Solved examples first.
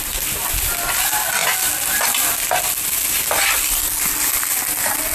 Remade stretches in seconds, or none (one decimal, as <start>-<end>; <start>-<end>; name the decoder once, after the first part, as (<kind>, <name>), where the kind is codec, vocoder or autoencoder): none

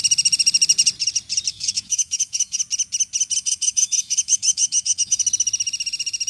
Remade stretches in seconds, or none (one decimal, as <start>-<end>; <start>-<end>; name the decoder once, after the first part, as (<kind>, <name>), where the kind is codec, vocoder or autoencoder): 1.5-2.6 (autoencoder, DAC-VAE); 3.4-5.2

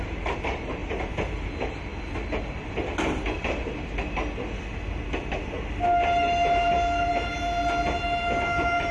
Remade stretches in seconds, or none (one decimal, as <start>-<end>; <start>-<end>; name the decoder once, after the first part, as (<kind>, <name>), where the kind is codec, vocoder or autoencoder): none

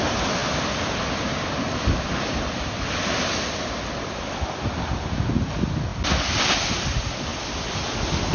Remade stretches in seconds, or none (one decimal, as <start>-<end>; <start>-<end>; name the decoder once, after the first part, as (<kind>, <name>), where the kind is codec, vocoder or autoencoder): none